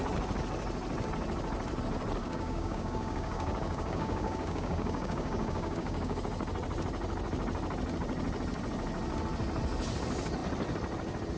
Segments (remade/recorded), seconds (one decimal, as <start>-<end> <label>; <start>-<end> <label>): 0.0-2.2 recorded; 2.2-6.2 remade; 6.2-11.4 recorded